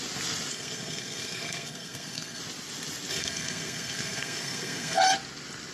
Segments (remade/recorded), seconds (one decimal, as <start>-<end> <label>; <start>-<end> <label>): 0.0-0.5 recorded; 0.5-2.4 remade; 2.4-3.1 recorded; 3.1-5.0 remade; 5.0-5.7 recorded